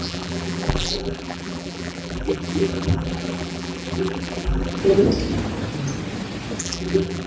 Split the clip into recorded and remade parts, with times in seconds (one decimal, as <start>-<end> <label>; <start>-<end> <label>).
0.0-4.8 remade; 4.8-6.6 recorded; 6.6-7.3 remade